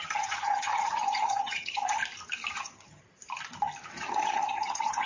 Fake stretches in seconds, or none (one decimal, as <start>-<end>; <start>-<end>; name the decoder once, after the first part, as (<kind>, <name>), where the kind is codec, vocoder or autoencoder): 0.0-2.0 (vocoder, HiFi-GAN); 2.5-3.0; 3.9-5.1

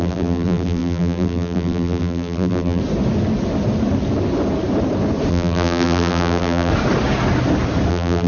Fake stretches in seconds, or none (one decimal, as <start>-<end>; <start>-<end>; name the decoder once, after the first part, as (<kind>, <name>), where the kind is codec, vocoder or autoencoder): 0.0-2.8 (vocoder, BigVGAN v2); 5.3-6.7; 7.9-8.3

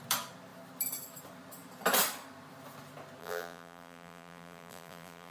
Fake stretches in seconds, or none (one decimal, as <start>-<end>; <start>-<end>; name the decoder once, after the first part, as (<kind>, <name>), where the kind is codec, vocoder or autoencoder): 3.2-5.3 (vocoder, BigVGAN v2)